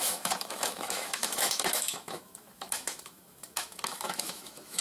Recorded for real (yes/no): no